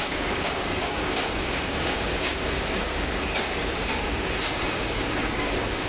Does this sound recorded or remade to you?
remade